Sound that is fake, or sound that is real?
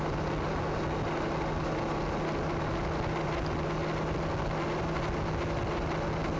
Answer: real